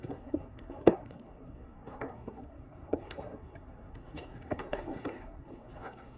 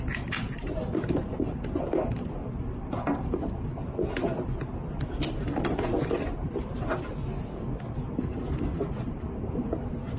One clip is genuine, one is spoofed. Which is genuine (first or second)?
second